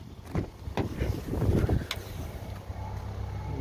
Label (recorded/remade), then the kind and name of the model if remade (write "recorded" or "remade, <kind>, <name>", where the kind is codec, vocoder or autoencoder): recorded